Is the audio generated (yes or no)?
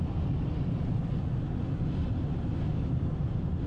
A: no